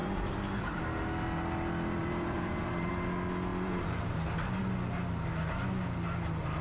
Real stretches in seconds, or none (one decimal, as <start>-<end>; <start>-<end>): 0.8-2.0; 2.9-3.5; 4.1-6.6